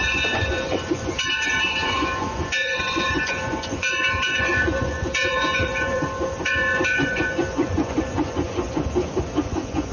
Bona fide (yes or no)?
no